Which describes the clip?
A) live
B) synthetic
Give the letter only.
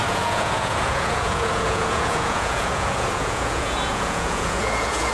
B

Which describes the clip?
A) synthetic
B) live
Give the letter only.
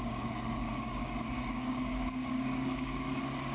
A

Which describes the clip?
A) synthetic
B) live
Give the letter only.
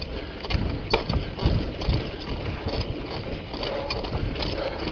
B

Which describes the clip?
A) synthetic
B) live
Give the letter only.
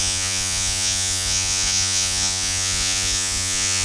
A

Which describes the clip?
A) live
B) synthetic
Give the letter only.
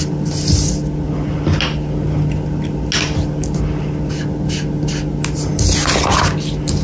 A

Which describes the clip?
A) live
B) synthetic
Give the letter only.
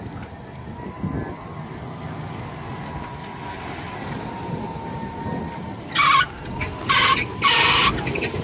A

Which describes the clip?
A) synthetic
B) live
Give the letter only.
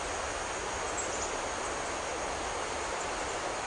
B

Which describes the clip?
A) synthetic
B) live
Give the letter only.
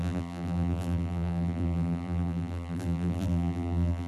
A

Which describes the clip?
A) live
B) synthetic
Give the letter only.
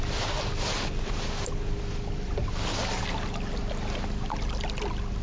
A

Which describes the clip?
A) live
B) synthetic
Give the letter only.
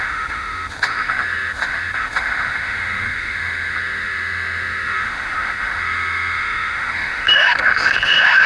B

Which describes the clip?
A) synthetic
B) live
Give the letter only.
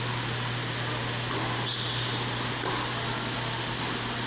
B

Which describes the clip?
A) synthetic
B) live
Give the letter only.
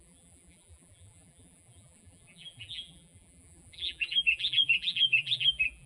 A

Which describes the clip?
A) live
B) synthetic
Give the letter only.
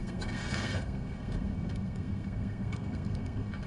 B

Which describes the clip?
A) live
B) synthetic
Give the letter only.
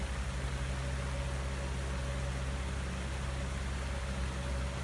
A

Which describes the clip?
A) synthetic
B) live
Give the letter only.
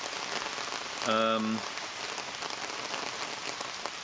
B